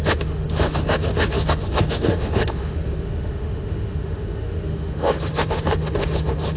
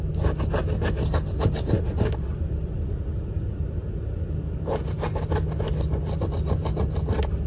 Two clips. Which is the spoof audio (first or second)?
first